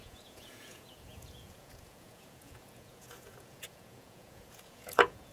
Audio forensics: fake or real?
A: fake